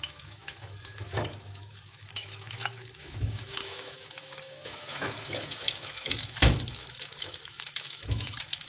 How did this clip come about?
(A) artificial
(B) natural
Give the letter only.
A